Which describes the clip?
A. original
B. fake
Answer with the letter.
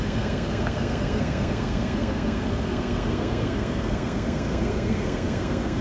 B